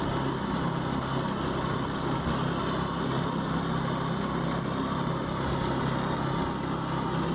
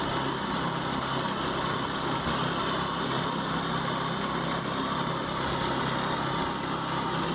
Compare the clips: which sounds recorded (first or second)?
first